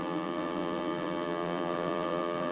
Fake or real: fake